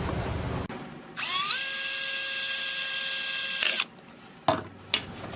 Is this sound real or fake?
real